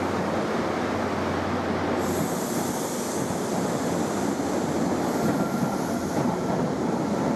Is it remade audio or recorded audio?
recorded